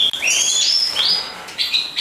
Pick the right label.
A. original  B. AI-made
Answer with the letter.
A